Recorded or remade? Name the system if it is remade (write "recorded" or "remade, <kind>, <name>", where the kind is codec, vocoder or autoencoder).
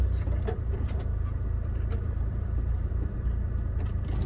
remade, vocoder, BigVGAN v2